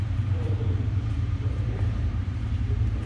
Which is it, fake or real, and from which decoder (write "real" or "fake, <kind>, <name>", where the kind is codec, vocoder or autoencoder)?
fake, vocoder, BigVGAN v2